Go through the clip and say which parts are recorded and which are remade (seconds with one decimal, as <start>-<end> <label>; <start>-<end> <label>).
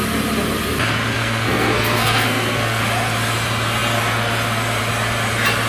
0.0-1.1 recorded; 1.1-2.8 remade; 2.8-5.7 recorded